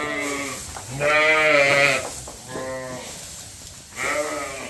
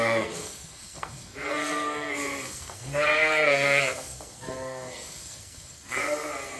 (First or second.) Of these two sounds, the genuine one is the first